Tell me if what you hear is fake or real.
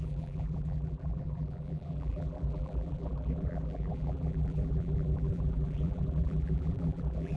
fake